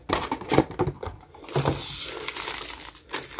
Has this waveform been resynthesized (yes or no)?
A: no